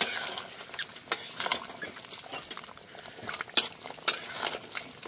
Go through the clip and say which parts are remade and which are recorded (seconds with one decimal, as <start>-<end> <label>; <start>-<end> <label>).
0.0-5.1 recorded